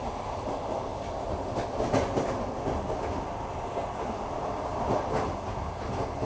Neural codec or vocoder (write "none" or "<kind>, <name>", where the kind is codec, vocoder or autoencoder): none